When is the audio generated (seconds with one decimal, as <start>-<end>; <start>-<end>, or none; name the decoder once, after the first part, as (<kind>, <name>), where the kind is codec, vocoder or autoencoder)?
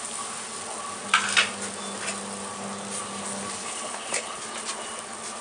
3.6-4.4 (codec, HILCodec)